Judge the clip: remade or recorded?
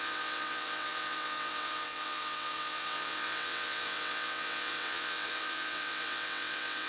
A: remade